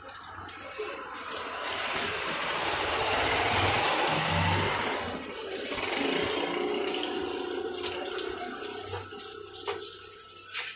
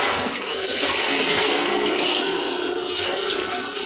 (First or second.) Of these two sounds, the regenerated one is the second